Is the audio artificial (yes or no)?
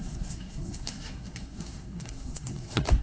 yes